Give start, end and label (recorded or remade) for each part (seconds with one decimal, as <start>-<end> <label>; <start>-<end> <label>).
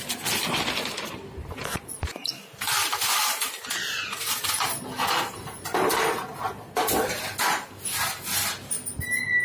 0.0-9.4 recorded